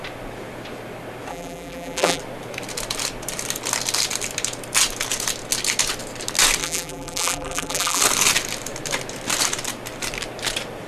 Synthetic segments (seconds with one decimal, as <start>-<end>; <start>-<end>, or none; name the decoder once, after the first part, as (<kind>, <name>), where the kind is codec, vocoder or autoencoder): 1.3-2.2 (vocoder, BigVGAN v2); 6.6-8.0